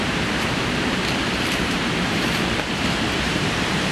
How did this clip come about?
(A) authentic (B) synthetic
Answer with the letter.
B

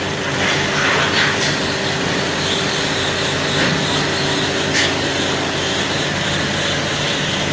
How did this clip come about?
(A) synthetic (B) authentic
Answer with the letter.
B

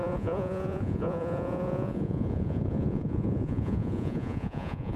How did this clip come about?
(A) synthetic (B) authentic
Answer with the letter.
A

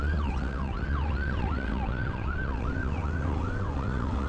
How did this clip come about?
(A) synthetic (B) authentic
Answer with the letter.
A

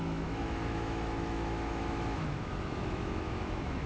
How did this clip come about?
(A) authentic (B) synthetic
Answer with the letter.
B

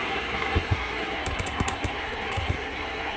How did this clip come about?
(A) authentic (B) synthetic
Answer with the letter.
B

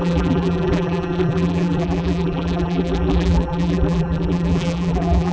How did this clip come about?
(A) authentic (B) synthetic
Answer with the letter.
B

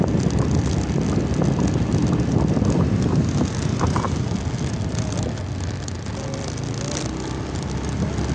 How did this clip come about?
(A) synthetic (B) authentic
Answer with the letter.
B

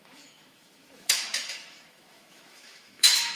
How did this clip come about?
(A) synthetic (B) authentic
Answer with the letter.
A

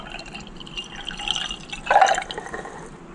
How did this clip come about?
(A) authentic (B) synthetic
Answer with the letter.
A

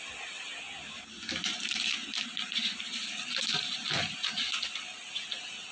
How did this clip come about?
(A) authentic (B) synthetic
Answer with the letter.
A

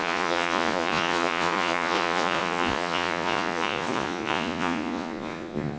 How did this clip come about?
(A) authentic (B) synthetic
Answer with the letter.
B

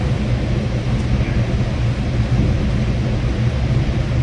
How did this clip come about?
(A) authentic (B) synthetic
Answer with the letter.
A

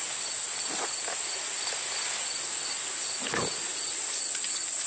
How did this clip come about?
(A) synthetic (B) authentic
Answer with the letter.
B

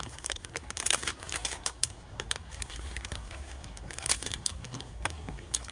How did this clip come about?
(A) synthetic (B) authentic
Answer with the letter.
A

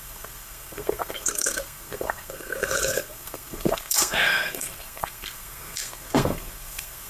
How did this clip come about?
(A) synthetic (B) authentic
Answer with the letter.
A